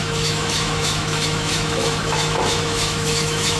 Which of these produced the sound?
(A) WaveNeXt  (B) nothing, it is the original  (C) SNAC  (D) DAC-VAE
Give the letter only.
D